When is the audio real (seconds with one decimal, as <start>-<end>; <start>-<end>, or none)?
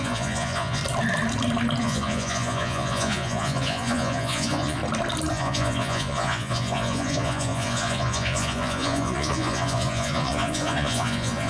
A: 0.8-1.8; 4.8-5.3